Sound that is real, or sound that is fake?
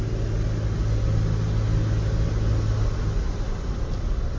real